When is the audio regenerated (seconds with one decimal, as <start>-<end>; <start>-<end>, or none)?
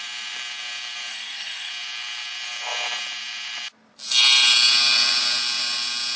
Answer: 1.1-1.7